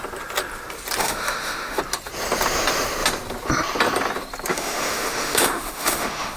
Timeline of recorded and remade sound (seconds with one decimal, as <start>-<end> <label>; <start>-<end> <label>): 0.0-1.0 recorded; 1.0-1.8 remade; 1.8-4.5 recorded; 4.5-6.4 remade